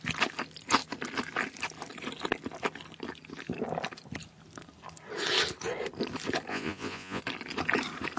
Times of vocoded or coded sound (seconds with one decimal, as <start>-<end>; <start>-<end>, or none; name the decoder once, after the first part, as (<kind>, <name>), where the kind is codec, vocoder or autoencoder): 6.5-7.2 (vocoder, Vocos)